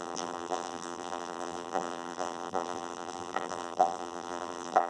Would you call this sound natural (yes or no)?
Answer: no